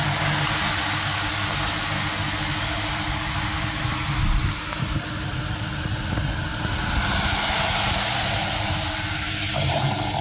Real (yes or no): yes